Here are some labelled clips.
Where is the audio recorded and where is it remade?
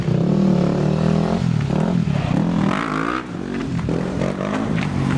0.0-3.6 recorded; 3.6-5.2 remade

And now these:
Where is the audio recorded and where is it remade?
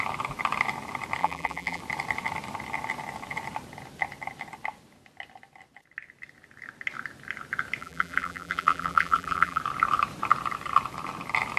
0.0-1.2 recorded; 1.2-1.8 remade; 1.8-7.8 recorded; 7.8-9.6 remade; 9.6-11.6 recorded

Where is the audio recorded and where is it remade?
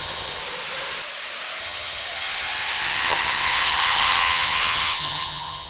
0.0-0.4 remade; 0.4-1.6 recorded; 1.6-5.7 remade